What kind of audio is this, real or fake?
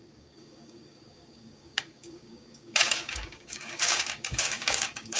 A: fake